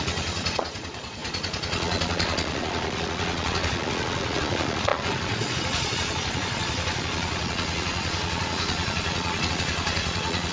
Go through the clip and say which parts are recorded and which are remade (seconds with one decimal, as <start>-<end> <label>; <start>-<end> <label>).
0.0-10.5 remade